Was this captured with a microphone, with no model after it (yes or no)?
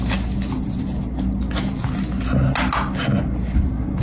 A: yes